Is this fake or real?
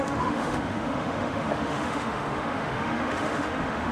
fake